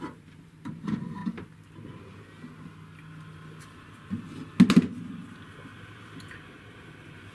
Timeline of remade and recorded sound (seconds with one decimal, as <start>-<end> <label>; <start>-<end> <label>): 0.0-1.2 remade; 1.2-3.6 recorded; 3.6-4.4 remade; 4.4-6.7 recorded; 6.7-7.3 remade